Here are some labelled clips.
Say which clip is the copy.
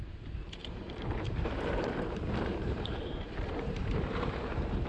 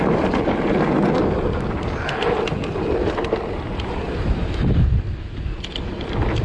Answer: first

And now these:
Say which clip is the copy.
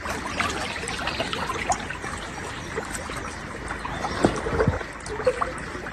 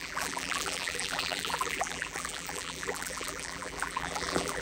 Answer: second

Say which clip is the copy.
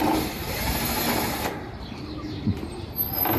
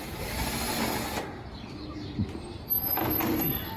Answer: first